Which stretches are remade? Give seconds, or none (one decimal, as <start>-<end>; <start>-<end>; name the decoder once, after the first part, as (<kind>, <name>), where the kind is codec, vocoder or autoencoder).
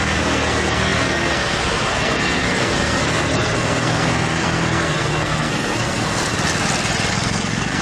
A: 0.0-6.3 (codec, SNAC); 7.1-7.8